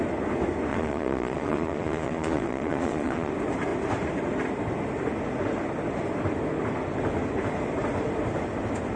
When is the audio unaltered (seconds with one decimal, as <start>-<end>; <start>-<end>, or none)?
0.0-0.7; 3.3-9.0

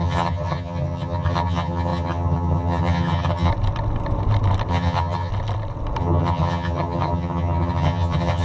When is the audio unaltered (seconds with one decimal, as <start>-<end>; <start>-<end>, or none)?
3.5-4.7; 5.3-6.0

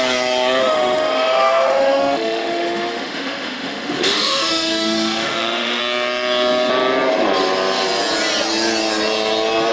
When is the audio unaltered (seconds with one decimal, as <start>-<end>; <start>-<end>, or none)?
0.0-0.6; 5.8-9.7

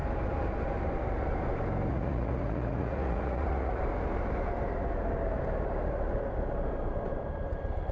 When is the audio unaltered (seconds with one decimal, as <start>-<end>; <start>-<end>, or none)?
0.0-1.9; 3.8-7.9

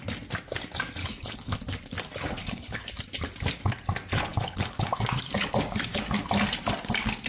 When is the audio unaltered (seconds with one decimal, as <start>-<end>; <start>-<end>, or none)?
0.0-1.0; 1.6-2.4; 2.9-4.3; 5.0-7.3

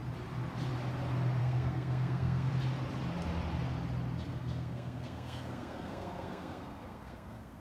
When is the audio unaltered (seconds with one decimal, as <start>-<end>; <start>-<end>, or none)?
0.0-1.4; 2.5-4.3

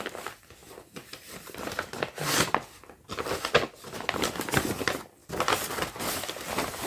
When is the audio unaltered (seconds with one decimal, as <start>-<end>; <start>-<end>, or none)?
0.0-6.9